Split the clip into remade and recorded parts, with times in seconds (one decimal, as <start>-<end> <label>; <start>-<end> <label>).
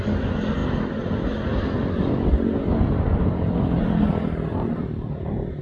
0.0-5.6 recorded